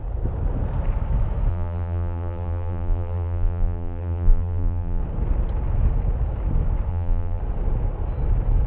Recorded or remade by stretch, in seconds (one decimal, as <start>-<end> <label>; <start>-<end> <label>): 0.0-1.5 recorded; 1.5-5.0 remade; 5.0-6.9 recorded; 6.9-7.4 remade; 7.4-8.7 recorded